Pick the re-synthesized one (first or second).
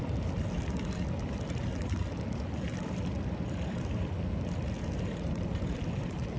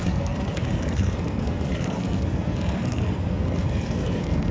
second